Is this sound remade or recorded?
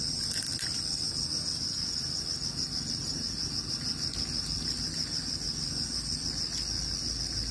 recorded